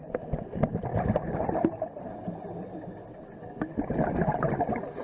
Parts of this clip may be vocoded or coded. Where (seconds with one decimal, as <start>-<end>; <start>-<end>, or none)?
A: none